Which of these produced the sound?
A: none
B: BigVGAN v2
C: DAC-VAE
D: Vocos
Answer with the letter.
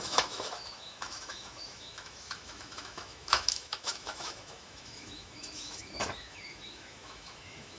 C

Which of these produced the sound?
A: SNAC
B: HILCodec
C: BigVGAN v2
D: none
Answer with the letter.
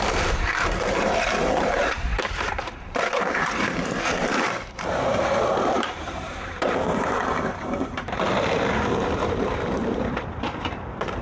C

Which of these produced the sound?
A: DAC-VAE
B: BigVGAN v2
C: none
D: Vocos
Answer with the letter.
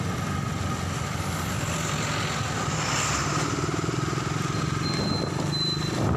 C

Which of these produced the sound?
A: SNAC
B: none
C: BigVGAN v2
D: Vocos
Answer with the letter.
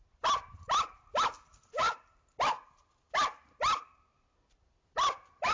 B